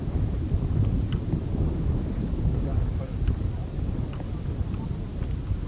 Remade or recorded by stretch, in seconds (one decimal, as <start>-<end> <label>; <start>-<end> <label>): 0.0-2.7 recorded; 2.7-5.3 remade; 5.3-5.7 recorded